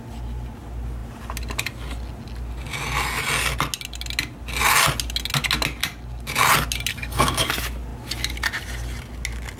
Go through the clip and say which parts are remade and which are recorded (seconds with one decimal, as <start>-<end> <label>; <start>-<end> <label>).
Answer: 0.0-6.9 recorded; 6.9-7.5 remade; 7.5-9.6 recorded